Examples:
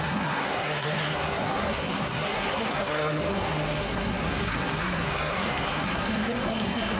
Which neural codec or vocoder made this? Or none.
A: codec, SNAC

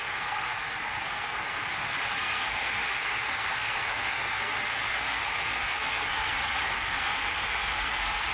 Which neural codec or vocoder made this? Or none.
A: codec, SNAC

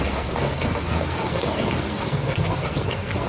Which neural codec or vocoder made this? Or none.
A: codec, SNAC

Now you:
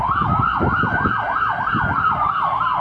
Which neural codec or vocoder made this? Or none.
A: none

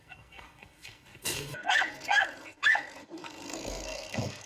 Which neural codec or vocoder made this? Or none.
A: codec, SNAC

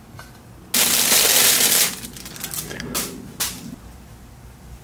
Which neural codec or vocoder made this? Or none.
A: none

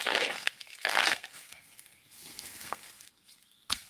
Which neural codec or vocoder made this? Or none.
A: codec, SNAC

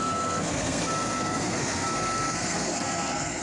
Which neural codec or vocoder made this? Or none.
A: codec, SNAC